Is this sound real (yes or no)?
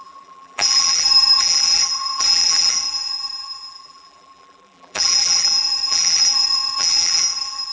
no